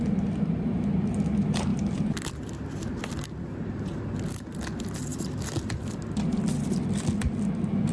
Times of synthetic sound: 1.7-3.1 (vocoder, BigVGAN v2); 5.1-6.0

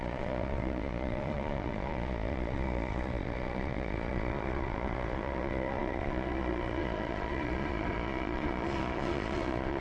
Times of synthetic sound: 0.0-9.8 (vocoder, Vocos)

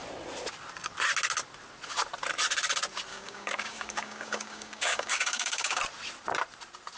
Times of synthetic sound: 3.1-5.8 (codec, DAC)